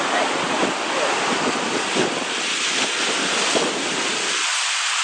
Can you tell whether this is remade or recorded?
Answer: recorded